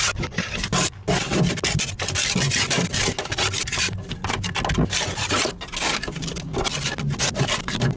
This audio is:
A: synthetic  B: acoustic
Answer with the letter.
B